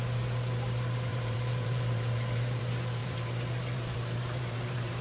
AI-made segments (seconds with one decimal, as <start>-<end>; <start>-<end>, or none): 1.1-2.6; 3.0-5.0